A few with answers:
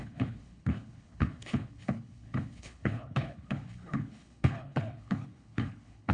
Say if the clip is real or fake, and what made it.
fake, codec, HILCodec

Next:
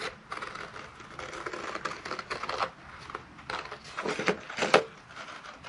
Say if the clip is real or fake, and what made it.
real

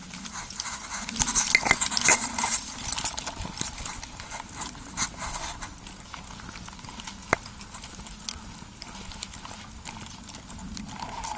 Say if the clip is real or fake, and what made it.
real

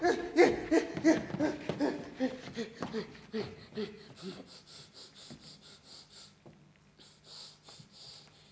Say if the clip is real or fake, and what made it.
real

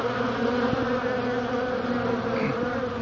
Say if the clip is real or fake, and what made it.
real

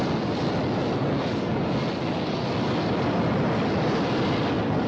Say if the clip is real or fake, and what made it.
real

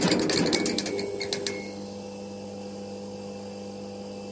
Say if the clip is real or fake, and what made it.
real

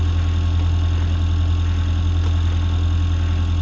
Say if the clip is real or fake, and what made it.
real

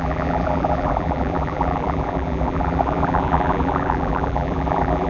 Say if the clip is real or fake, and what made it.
fake, vocoder, BigVGAN v2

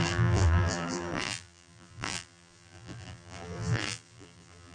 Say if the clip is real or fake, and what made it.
fake, vocoder, BigVGAN v2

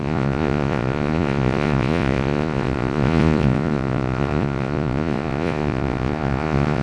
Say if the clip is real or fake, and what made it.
fake, vocoder, Vocos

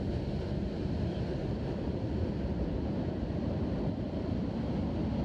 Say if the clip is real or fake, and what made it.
real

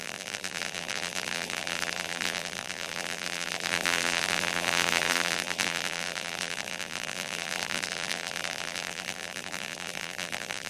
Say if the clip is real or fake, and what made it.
fake, vocoder, BigVGAN v2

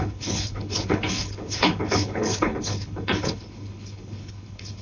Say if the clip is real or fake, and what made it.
fake, codec, HILCodec